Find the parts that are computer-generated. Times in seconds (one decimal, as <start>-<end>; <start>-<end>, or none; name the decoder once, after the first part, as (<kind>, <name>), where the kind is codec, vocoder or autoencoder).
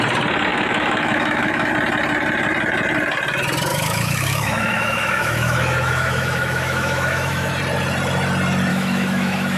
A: 0.5-1.7 (autoencoder, DAC-VAE); 3.7-7.5; 8.7-9.6